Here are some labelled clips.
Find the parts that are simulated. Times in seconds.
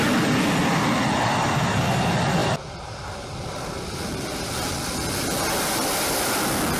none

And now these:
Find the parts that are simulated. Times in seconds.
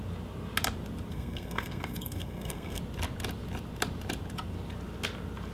1.1-2.8 (codec, SNAC)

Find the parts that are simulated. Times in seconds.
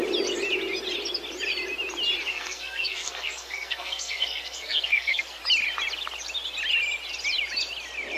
2.3-5.4 (codec, SNAC)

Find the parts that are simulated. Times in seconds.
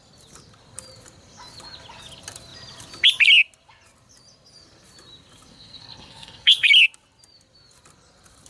5.5-6.7 (codec, SNAC)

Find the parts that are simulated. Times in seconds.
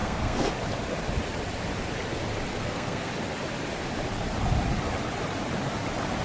0.0-0.5 (codec, SNAC); 2.5-3.1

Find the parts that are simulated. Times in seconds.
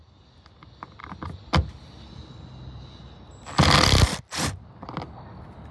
none